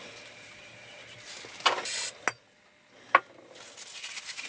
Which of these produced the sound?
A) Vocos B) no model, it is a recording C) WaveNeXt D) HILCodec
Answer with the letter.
B